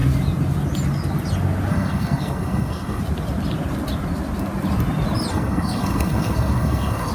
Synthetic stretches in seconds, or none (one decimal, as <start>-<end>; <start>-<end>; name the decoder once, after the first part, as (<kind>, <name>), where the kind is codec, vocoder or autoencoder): 1.7-3.0 (codec, SNAC); 5.3-7.1